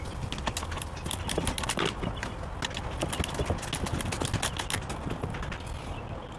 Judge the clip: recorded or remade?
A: recorded